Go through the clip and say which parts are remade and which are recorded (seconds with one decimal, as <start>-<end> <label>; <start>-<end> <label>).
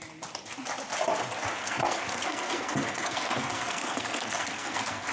0.0-1.6 recorded; 1.6-5.1 remade